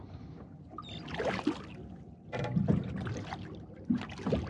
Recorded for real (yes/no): yes